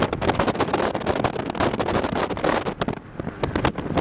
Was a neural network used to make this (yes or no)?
no